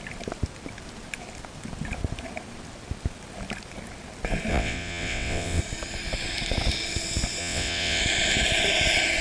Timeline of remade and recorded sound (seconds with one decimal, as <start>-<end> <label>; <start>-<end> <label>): 0.0-4.5 recorded; 4.5-5.6 remade; 5.6-7.4 recorded; 7.4-8.0 remade; 8.0-9.2 recorded